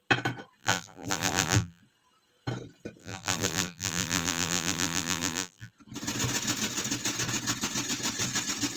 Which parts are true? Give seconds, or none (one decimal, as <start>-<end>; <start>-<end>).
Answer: 0.0-0.6; 1.8-3.0; 5.7-8.8